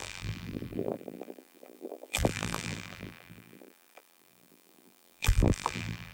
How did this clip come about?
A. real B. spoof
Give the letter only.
B